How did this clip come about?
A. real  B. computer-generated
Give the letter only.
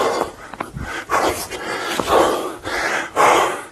A